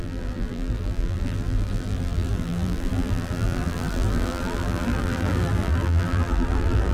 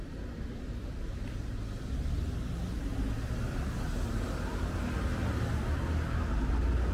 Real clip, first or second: second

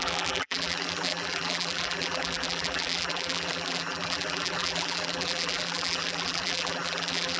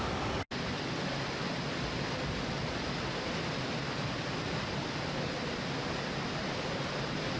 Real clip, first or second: second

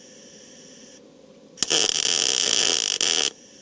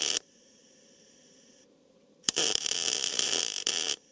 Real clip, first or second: first